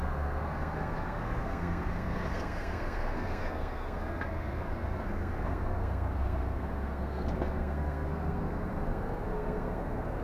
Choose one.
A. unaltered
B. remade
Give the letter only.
B